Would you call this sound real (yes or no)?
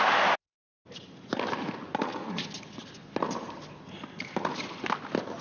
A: yes